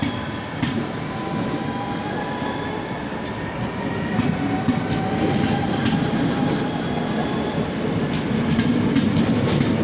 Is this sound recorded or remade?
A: recorded